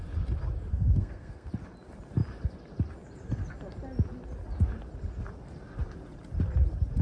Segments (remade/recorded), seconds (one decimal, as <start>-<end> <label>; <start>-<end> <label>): 0.0-0.7 recorded; 0.7-1.5 remade; 1.5-7.0 recorded